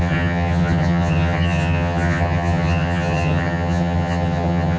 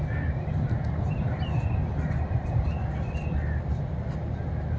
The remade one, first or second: first